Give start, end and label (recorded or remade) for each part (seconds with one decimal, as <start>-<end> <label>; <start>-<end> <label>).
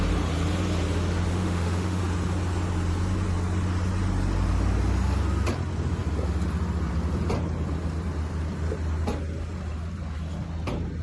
0.0-1.3 recorded; 1.3-2.0 remade; 2.0-11.0 recorded